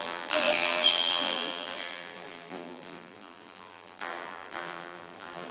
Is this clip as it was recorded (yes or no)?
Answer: no